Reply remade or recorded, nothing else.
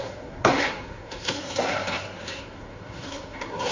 remade